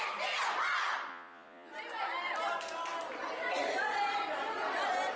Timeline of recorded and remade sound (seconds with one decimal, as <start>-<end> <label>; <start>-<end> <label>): 0.0-1.1 recorded; 1.1-1.7 remade; 1.7-5.2 recorded